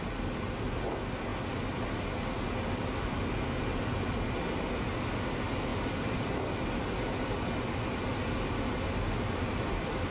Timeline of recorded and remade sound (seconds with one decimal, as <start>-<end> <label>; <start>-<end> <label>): 0.0-10.1 recorded